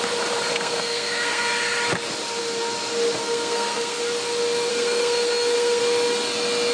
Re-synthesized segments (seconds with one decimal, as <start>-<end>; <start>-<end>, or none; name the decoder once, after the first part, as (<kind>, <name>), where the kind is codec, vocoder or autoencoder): 0.5-1.5 (codec, SNAC); 3.2-4.0; 4.7-5.8